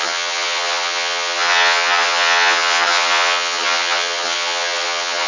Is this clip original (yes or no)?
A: no